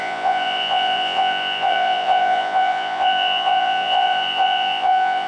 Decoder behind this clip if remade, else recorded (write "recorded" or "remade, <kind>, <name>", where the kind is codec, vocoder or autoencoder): remade, vocoder, Vocos